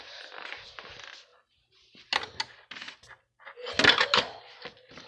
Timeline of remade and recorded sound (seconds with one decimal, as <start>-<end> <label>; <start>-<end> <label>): 0.0-5.1 recorded